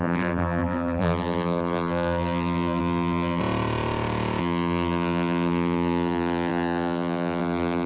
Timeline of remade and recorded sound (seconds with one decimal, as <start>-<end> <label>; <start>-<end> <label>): 0.0-3.4 remade; 3.4-4.4 recorded; 4.4-7.9 remade